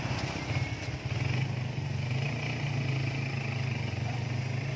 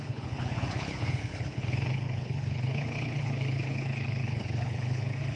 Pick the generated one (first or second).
second